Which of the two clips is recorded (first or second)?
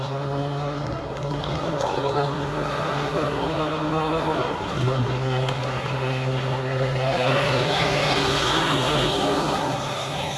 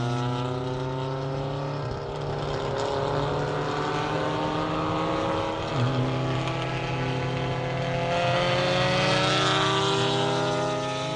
second